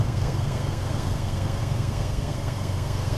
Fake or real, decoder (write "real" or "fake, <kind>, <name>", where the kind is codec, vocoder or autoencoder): fake, codec, SNAC